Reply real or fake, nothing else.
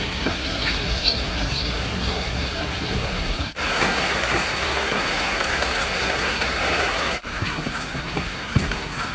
fake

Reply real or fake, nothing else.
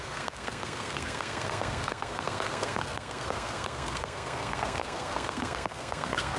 fake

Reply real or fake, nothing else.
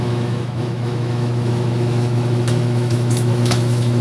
fake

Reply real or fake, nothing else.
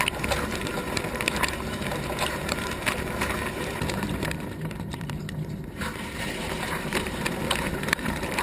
fake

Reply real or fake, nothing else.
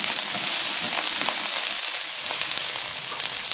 real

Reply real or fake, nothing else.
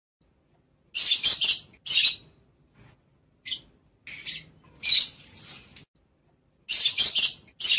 real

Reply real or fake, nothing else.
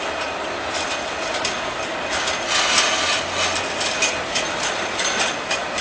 real